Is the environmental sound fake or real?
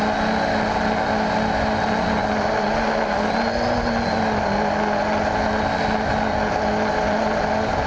real